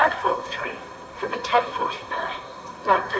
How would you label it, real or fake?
fake